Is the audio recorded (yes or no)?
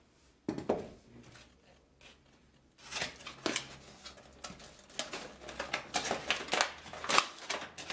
yes